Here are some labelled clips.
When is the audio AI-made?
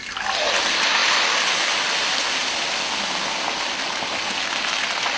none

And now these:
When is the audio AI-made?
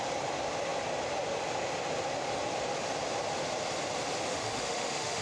4.3-5.2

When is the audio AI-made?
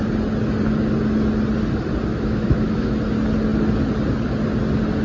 2.1-2.9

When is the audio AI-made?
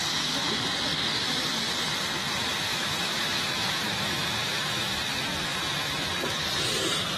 2.7-6.4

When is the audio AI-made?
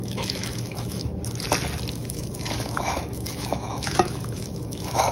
0.0-1.1; 1.9-5.1